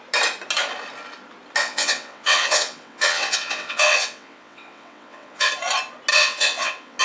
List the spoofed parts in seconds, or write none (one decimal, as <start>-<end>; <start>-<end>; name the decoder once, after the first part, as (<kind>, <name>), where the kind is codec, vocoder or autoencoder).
1.6-5.5 (vocoder, WaveNeXt); 6.1-7.0